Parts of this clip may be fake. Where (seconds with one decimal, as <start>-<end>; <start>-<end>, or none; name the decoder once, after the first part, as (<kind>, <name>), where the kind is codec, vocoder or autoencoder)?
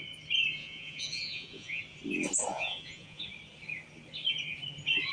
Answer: 0.6-1.8 (vocoder, Vocos); 2.5-3.2